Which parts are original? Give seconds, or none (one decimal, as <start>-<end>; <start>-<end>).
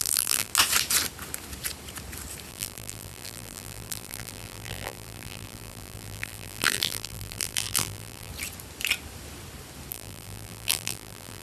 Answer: 0.5-2.5; 8.3-9.9